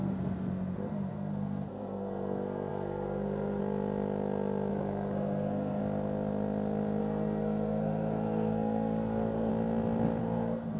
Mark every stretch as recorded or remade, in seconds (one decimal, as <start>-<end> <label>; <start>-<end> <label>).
0.0-3.6 remade; 3.6-4.7 recorded; 4.7-5.8 remade; 5.8-7.0 recorded; 7.0-9.5 remade; 9.5-10.2 recorded; 10.2-10.8 remade